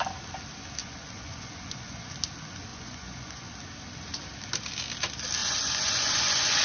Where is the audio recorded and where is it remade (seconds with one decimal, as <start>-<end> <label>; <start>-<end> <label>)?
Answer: 0.0-0.8 recorded; 0.8-2.1 remade; 2.1-2.7 recorded; 2.7-3.5 remade; 3.5-5.4 recorded; 5.4-6.6 remade